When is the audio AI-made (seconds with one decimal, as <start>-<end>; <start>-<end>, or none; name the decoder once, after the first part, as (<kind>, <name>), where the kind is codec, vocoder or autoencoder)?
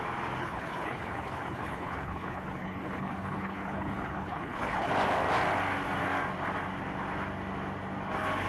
0.4-4.9 (codec, HILCodec)